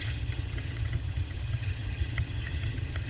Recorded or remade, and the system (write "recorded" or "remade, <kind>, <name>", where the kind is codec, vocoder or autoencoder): remade, vocoder, HiFi-GAN